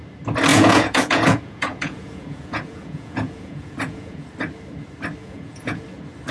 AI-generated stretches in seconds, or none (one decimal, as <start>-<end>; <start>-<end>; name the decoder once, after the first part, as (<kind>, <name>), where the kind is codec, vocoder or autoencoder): 0.5-4.3 (vocoder, Vocos); 5.2-5.8